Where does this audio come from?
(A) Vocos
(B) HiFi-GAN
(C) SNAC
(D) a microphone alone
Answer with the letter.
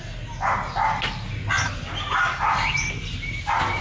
D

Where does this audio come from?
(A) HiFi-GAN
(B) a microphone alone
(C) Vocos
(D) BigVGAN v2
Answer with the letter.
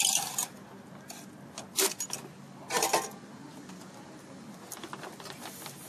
B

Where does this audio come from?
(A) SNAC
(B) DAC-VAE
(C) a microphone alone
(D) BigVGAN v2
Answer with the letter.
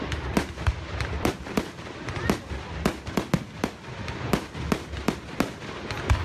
C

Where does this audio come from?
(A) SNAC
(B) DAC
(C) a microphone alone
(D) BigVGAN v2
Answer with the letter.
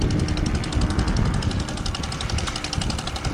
D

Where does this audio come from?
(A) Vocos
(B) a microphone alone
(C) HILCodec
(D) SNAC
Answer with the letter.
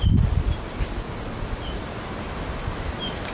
B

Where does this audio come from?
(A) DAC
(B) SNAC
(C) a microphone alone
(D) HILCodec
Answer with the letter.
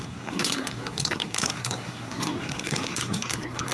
B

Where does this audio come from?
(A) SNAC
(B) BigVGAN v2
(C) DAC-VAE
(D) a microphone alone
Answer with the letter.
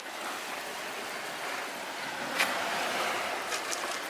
D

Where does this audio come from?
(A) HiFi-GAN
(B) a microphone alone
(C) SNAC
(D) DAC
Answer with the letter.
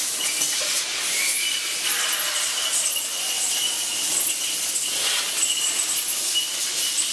B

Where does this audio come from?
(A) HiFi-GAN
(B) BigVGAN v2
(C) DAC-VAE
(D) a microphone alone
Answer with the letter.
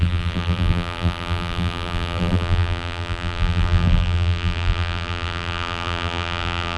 B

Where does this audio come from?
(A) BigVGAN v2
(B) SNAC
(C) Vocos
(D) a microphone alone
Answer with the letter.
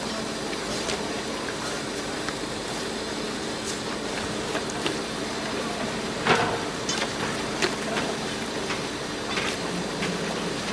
A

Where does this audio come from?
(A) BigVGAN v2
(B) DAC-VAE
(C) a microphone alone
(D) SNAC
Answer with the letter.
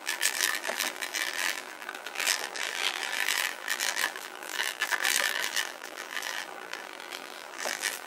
A